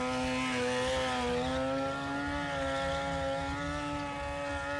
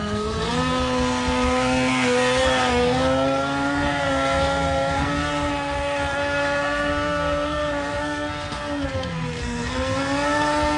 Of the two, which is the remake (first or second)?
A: second